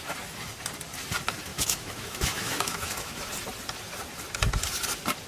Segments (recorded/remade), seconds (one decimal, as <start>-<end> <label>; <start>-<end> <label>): 0.0-1.5 recorded; 1.5-3.3 remade; 3.3-5.3 recorded